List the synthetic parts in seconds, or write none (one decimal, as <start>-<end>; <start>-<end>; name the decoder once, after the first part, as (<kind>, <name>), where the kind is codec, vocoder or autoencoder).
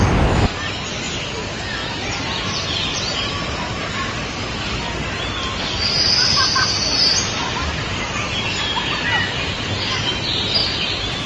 1.8-3.1 (vocoder, BigVGAN v2)